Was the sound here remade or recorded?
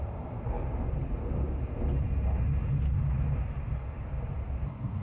recorded